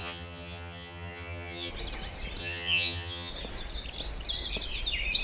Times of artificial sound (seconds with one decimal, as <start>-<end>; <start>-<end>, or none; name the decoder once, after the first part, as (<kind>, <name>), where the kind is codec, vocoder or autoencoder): 0.0-1.7 (vocoder, HiFi-GAN); 2.4-3.3